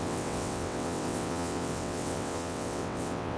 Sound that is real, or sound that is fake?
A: fake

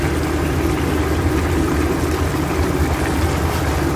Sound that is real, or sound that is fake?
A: real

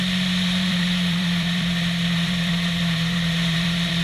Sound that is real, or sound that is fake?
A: fake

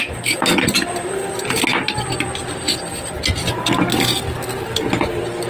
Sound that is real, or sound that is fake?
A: real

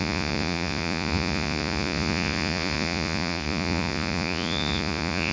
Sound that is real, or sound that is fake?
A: fake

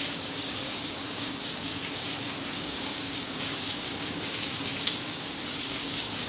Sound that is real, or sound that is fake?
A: fake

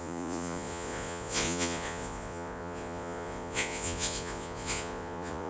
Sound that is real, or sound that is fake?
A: fake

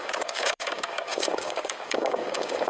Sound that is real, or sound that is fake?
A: fake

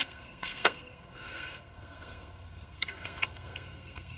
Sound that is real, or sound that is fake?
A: fake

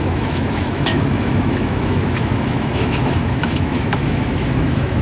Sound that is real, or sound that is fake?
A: fake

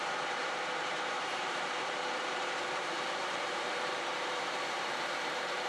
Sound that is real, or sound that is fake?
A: fake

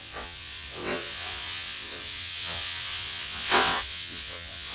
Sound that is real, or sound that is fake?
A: fake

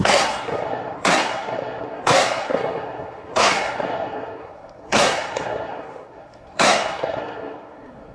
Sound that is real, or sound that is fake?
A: fake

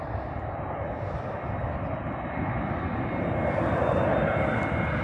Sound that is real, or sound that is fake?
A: real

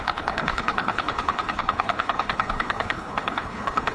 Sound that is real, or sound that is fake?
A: fake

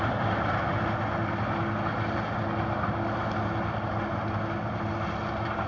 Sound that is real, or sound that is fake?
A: real